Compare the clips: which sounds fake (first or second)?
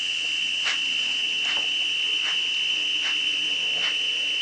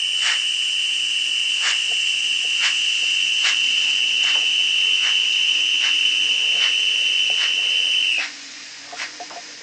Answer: second